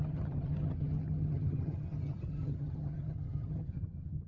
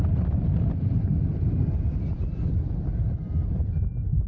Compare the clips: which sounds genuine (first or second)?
second